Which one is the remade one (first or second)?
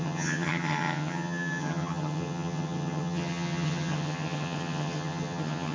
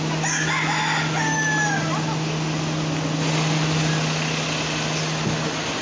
first